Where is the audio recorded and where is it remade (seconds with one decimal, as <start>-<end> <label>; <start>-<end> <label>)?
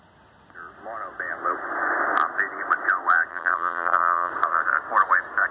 0.0-3.3 recorded; 3.3-4.3 remade; 4.3-5.5 recorded